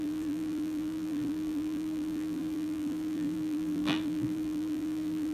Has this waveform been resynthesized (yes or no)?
yes